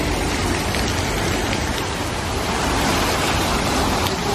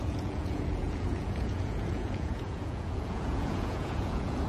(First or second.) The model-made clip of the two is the second